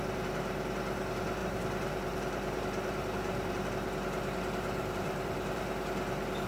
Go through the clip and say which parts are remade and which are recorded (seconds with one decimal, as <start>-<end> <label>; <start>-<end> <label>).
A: 0.0-1.4 recorded; 1.4-3.7 remade; 3.7-4.8 recorded; 4.8-5.6 remade; 5.6-6.5 recorded

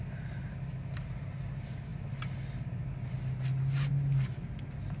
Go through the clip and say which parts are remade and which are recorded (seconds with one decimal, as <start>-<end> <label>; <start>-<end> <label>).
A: 0.0-5.0 recorded

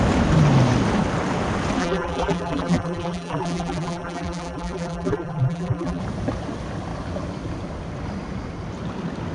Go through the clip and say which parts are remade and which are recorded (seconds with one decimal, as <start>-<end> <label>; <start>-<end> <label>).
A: 0.0-1.8 recorded; 1.8-6.0 remade; 6.0-9.3 recorded

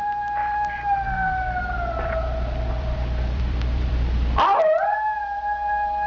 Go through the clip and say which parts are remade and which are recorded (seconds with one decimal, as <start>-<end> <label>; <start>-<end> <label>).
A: 0.0-0.4 recorded; 0.4-3.9 remade; 3.9-6.1 recorded

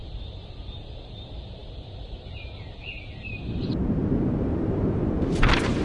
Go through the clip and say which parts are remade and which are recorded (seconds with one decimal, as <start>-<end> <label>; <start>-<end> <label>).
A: 0.0-5.8 remade